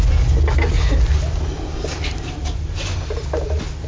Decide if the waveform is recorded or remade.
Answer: recorded